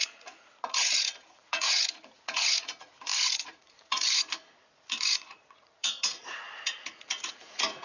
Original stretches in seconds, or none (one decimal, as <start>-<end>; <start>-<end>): none